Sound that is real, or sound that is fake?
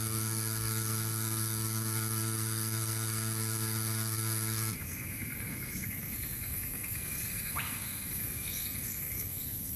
fake